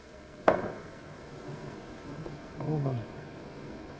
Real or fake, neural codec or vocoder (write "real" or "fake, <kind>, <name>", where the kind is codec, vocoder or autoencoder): fake, codec, SNAC